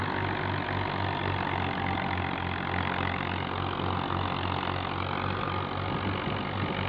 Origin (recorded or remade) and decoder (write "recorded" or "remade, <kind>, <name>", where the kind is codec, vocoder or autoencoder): recorded